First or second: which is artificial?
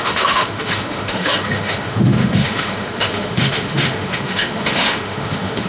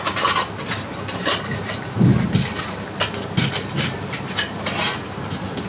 first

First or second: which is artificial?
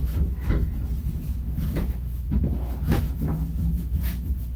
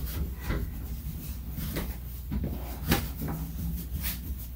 first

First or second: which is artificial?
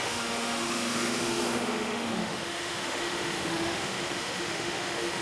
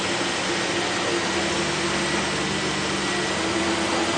first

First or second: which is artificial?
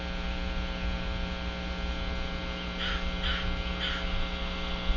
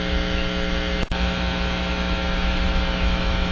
second